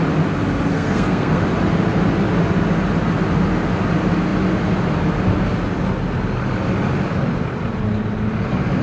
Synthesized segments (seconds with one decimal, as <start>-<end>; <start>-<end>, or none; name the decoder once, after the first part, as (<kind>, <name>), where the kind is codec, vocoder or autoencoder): 0.7-1.4 (codec, SNAC)